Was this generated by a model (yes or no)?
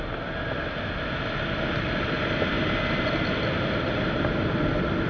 no